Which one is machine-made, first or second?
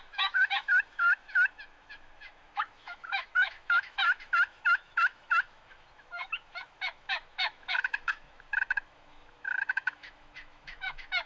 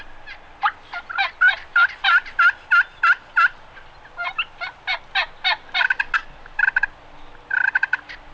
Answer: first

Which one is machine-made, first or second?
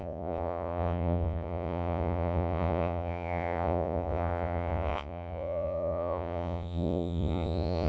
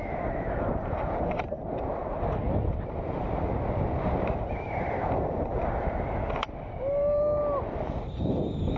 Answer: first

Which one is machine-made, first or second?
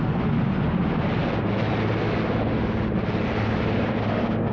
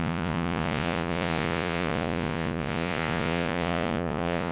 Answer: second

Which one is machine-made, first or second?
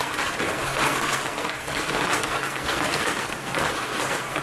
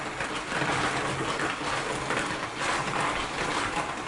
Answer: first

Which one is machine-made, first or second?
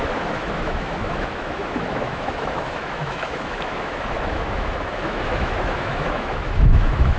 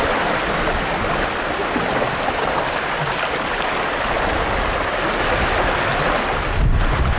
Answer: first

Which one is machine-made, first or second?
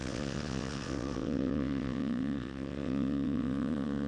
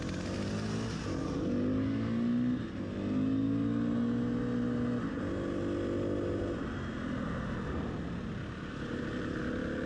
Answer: first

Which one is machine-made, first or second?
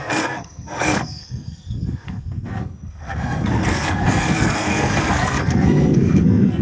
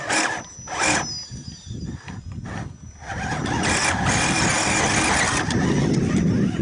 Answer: first